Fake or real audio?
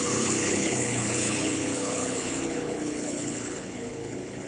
fake